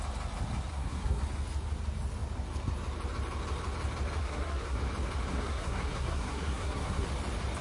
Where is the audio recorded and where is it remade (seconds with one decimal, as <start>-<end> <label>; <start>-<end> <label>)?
0.0-0.7 recorded; 0.7-1.2 remade; 1.2-4.2 recorded; 4.2-4.8 remade; 4.8-5.3 recorded; 5.3-7.1 remade; 7.1-7.6 recorded